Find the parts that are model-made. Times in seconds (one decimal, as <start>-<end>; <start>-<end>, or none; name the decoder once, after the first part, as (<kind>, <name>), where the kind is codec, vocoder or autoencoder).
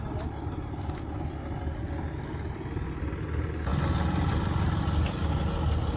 none